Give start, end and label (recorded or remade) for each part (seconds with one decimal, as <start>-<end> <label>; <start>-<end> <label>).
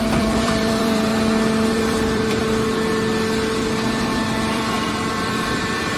0.0-1.1 remade; 1.1-1.7 recorded; 1.7-2.4 remade; 2.4-4.5 recorded; 4.5-6.0 remade